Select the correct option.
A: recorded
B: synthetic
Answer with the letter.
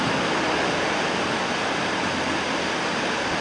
A